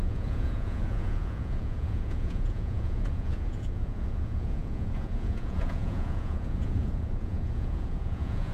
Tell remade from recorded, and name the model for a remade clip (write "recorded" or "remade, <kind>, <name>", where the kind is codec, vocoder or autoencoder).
remade, vocoder, Vocos